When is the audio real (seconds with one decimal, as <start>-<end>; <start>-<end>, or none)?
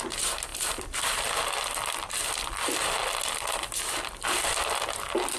0.0-0.5; 2.2-5.4